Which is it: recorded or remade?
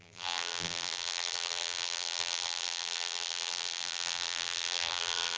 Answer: remade